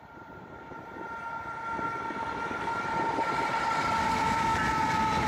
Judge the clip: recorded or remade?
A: recorded